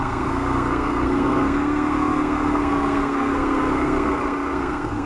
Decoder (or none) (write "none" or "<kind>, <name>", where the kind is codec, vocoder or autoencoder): codec, SNAC